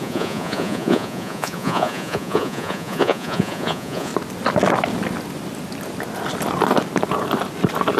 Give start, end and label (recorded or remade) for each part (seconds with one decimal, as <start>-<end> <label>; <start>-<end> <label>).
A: 0.0-4.1 remade; 4.1-8.0 recorded